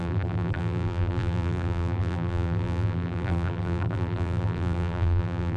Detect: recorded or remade remade